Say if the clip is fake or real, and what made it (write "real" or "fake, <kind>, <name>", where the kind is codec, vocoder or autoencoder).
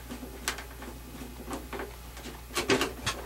real